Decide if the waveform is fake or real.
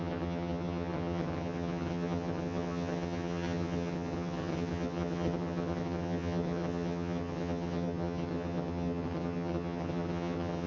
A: fake